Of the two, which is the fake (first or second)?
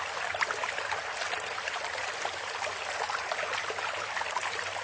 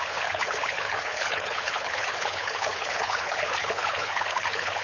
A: second